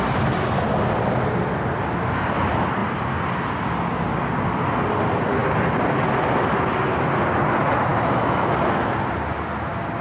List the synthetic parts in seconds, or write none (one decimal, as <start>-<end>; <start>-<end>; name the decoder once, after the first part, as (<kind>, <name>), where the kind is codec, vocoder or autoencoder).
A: 7.9-8.5 (autoencoder, DAC-VAE)